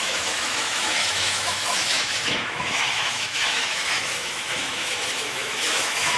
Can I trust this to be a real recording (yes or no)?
no